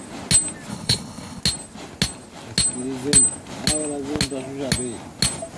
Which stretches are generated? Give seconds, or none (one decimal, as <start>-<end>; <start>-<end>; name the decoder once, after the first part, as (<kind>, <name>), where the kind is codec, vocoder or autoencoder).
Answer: 0.7-1.4 (codec, HILCodec)